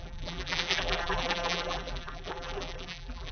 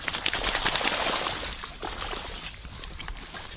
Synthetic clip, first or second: first